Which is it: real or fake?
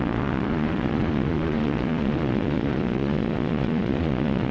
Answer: fake